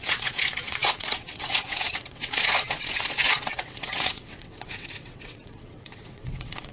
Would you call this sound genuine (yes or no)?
no